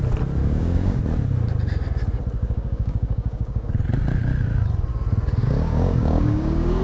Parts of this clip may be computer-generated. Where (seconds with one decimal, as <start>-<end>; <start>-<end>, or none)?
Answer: 0.4-1.0; 2.4-3.7; 5.4-6.8